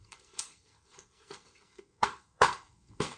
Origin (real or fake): fake